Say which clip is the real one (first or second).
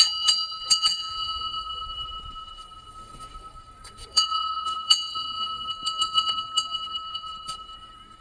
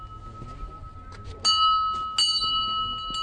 second